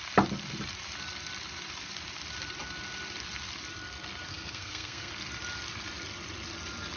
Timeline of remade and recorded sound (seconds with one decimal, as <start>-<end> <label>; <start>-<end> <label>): 0.0-4.3 recorded; 4.3-5.1 remade; 5.1-7.0 recorded